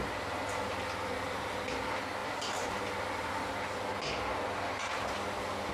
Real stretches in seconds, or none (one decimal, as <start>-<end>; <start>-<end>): 0.0-2.2; 2.8-5.7